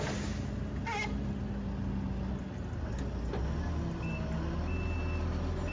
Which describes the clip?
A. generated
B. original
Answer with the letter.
B